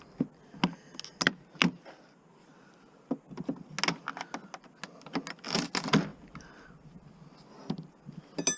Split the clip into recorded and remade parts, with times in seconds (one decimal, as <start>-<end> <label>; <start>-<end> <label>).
0.0-8.6 recorded